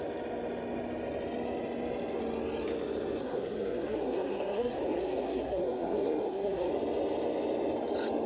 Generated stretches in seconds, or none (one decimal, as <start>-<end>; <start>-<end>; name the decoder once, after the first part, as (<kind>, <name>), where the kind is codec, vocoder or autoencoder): 3.2-6.7 (codec, SNAC)